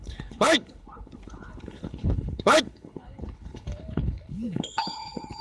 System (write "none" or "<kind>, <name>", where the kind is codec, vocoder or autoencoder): codec, HILCodec